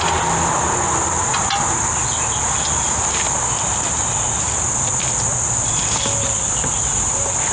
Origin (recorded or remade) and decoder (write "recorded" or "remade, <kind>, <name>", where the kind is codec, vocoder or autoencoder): recorded